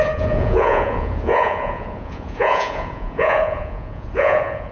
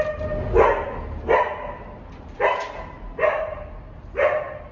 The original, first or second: second